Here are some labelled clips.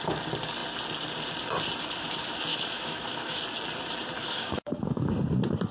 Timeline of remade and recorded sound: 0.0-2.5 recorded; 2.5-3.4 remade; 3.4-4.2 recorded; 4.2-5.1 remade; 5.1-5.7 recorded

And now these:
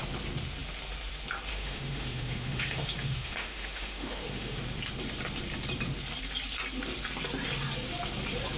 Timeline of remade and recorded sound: 0.0-1.5 recorded; 1.5-4.6 remade; 4.6-8.6 recorded

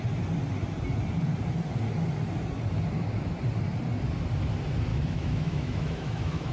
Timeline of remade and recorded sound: 0.0-4.9 recorded; 4.9-6.5 remade